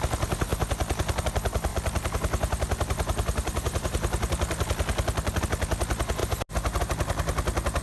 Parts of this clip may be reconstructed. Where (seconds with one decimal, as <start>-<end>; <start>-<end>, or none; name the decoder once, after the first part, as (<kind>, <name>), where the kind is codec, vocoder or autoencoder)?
1.7-5.4 (vocoder, BigVGAN v2)